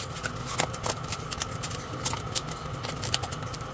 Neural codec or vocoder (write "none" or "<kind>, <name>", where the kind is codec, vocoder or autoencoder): none